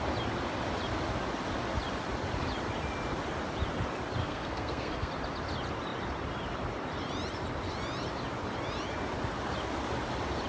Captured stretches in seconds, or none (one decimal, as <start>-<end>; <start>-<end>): 0.0-4.2; 5.1-10.5